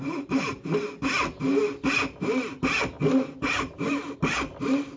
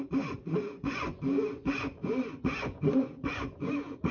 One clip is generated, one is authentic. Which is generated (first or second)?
second